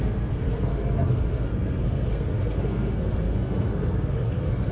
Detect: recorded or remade remade